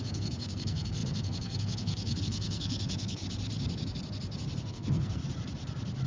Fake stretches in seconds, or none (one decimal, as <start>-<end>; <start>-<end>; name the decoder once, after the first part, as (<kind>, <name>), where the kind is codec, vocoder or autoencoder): 0.0-3.2 (codec, SNAC); 4.7-5.2